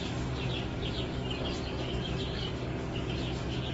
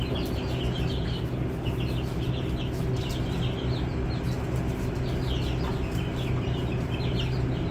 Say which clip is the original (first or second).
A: second